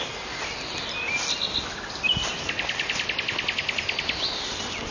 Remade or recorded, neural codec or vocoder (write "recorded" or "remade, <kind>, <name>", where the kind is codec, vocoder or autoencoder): recorded